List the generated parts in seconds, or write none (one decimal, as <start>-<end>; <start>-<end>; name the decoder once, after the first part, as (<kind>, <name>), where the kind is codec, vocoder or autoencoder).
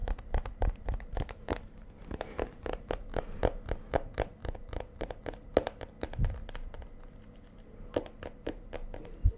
0.0-2.9 (vocoder, BigVGAN v2); 4.4-5.2